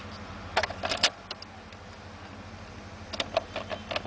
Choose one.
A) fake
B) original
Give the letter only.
B